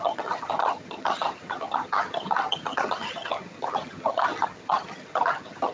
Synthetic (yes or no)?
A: yes